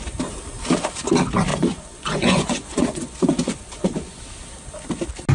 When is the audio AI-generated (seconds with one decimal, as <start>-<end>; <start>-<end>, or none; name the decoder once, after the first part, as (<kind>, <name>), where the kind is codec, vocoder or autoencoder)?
1.5-4.2 (vocoder, Vocos)